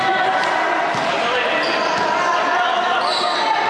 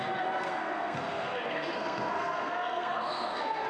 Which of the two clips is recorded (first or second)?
first